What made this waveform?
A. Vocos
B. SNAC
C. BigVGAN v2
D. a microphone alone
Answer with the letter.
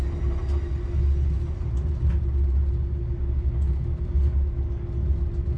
D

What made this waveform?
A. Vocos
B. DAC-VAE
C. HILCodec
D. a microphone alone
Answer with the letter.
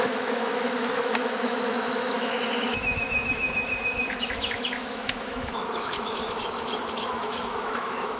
B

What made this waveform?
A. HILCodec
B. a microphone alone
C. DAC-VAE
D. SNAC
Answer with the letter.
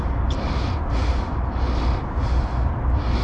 B